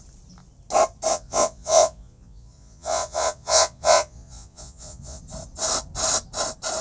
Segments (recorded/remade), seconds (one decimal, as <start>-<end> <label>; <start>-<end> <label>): 0.0-1.1 recorded; 1.1-5.2 remade; 5.2-6.8 recorded